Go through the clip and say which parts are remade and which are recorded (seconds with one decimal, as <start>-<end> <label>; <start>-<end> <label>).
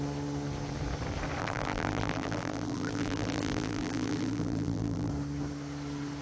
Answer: 0.0-1.4 recorded; 1.4-5.1 remade; 5.1-6.2 recorded